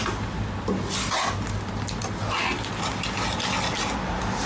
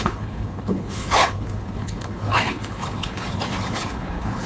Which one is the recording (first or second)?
first